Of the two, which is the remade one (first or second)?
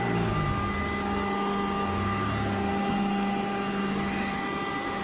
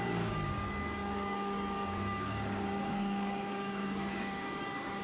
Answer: second